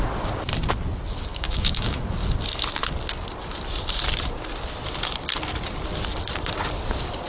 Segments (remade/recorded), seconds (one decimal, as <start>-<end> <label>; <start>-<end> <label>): 0.0-1.3 recorded; 1.3-2.0 remade; 2.0-7.3 recorded